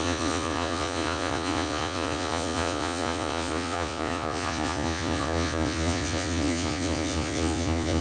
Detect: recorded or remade remade